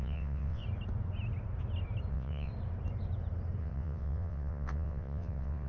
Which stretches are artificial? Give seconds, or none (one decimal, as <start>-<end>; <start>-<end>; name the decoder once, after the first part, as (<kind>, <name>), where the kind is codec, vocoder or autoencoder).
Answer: 0.0-0.6 (vocoder, WaveNeXt); 2.1-2.5; 3.6-5.7